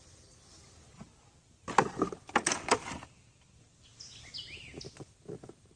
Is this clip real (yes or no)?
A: yes